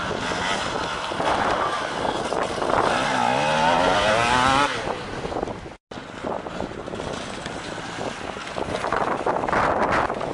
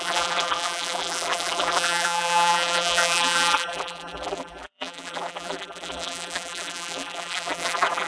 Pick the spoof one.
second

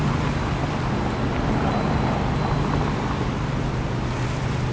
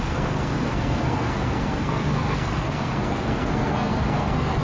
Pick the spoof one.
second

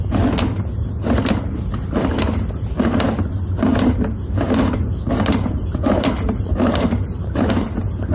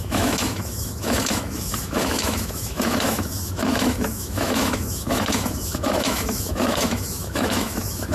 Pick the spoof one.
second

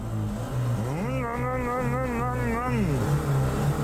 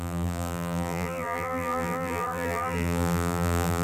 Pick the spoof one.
second